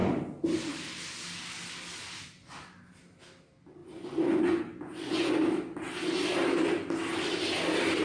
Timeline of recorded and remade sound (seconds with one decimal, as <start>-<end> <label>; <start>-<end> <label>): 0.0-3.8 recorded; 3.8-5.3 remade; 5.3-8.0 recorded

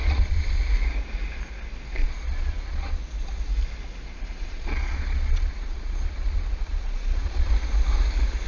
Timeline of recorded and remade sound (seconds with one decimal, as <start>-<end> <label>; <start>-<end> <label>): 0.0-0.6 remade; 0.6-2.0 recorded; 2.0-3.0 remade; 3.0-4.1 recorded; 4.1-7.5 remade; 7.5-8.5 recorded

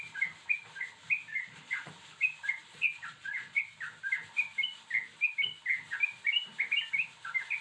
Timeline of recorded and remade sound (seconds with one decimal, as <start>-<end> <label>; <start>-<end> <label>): 0.0-1.3 recorded; 1.3-1.9 remade; 1.9-2.7 recorded; 2.7-3.6 remade; 3.6-7.6 recorded

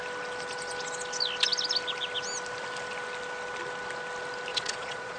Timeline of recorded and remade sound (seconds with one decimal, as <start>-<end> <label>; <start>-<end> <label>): 0.0-4.5 recorded; 4.5-5.2 remade